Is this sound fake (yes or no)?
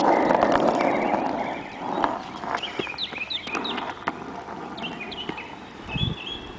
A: no